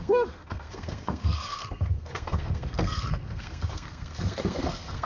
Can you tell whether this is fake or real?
fake